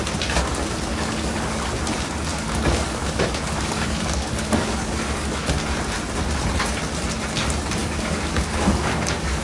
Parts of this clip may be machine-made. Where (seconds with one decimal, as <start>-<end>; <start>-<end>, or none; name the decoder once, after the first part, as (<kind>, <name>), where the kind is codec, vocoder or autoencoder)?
0.9-1.7 (codec, DAC); 2.3-5.5; 7.8-9.4